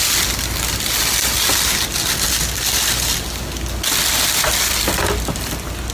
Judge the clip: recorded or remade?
recorded